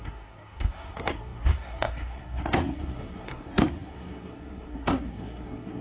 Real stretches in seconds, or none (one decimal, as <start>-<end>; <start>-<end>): none